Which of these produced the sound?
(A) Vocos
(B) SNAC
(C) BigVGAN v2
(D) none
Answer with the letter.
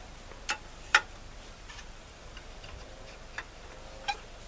C